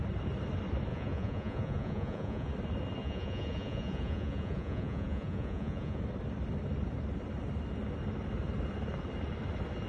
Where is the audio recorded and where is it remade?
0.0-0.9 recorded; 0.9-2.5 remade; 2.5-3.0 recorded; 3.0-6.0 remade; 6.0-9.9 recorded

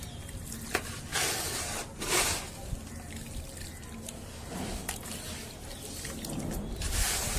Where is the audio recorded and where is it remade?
0.0-7.4 recorded

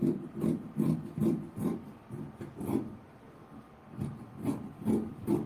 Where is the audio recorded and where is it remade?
0.0-1.2 recorded; 1.2-2.2 remade; 2.2-3.4 recorded; 3.4-5.5 remade

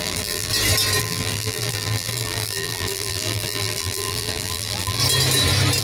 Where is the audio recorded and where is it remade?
0.0-0.5 remade; 0.5-1.0 recorded; 1.0-5.0 remade; 5.0-5.8 recorded

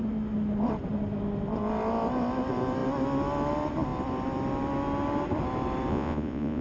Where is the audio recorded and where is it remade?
0.0-5.9 recorded; 5.9-6.6 remade

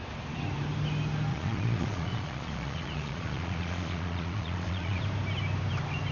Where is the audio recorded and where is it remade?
0.0-1.3 recorded; 1.3-5.0 remade; 5.0-6.1 recorded

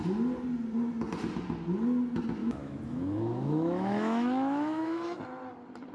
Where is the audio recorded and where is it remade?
0.0-2.4 recorded; 2.4-5.2 remade; 5.2-5.9 recorded